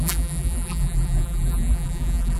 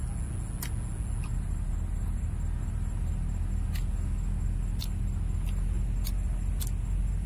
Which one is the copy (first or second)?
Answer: first